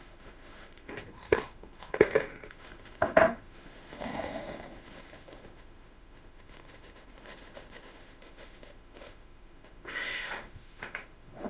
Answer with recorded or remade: remade